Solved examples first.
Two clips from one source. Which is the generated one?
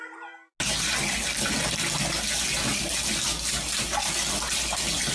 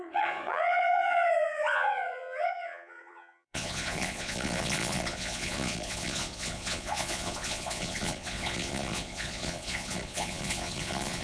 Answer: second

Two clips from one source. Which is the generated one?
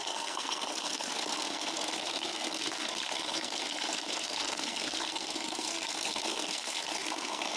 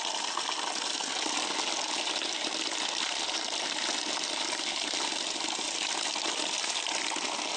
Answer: first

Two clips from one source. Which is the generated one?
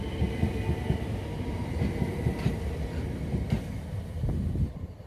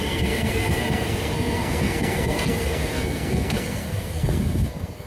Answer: second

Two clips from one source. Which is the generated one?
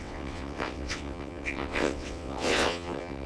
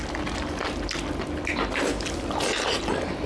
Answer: first